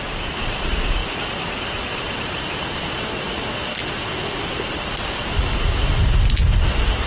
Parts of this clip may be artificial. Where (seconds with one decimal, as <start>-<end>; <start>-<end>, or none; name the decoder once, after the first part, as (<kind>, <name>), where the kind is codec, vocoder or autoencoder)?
none